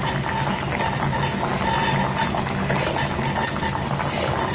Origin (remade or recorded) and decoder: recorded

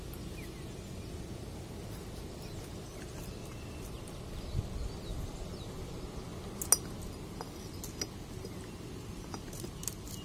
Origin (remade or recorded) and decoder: recorded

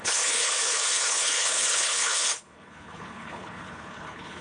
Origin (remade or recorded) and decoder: remade, codec, HILCodec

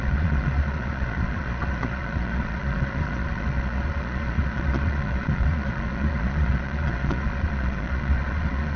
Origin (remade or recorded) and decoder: remade, vocoder, Vocos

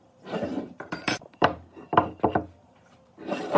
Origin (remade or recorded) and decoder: remade, vocoder, BigVGAN v2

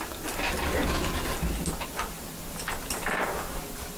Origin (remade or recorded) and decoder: recorded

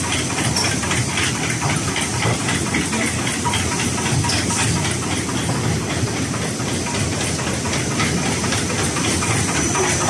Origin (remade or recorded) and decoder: recorded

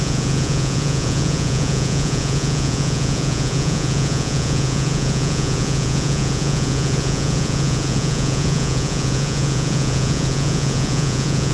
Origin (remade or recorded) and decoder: remade, vocoder, Vocos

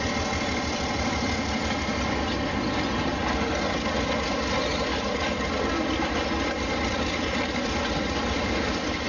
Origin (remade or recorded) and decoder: recorded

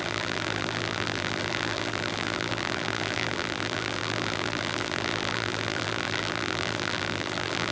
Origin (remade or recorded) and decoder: remade, vocoder, BigVGAN v2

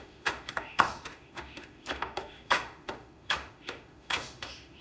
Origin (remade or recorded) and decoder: remade, autoencoder, DAC-VAE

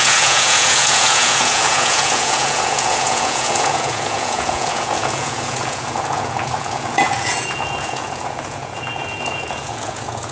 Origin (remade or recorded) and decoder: remade, vocoder, Vocos